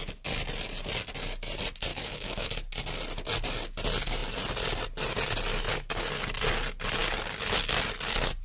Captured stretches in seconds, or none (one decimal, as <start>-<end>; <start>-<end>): 0.0-1.9; 2.5-8.4